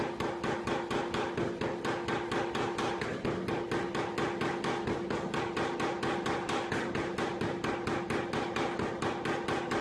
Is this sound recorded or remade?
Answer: recorded